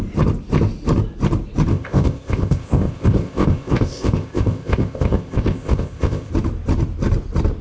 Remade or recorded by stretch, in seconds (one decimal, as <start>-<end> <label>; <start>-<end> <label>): 0.0-1.7 recorded; 1.7-6.3 remade; 6.3-7.6 recorded